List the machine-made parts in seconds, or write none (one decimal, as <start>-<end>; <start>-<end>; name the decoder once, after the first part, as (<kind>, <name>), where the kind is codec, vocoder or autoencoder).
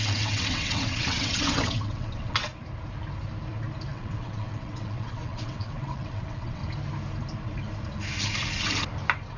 0.0-2.5 (vocoder, WaveNeXt); 3.9-6.6